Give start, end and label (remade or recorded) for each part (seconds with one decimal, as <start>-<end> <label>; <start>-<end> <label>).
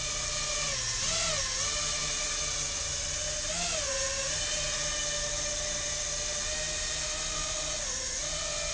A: 0.0-8.7 recorded